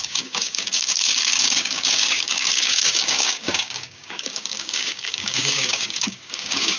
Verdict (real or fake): fake